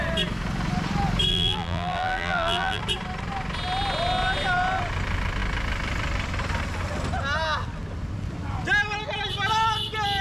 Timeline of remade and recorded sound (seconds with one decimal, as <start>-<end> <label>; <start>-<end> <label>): 0.0-1.3 recorded; 1.3-2.8 remade; 2.8-10.2 recorded

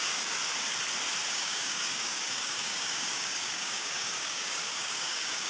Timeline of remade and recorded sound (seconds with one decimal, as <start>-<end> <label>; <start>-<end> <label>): 0.0-0.4 remade; 0.4-1.3 recorded; 1.3-5.5 remade